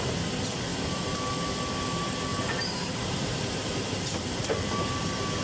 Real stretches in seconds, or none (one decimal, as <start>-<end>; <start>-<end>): 0.0-0.7; 1.2-2.3; 4.4-5.4